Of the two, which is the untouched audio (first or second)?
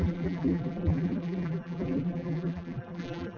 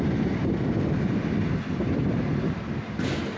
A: second